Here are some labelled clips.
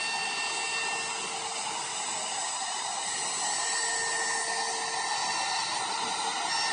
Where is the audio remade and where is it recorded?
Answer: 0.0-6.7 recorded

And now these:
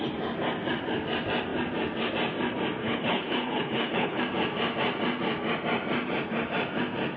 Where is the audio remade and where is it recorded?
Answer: 0.0-2.8 recorded; 2.8-4.2 remade; 4.2-7.2 recorded